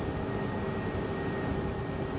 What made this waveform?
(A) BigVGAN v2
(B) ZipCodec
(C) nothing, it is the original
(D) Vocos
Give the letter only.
C